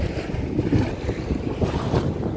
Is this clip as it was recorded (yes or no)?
yes